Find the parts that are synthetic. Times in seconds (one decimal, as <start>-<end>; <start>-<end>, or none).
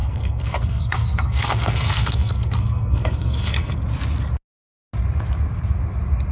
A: 0.0-3.8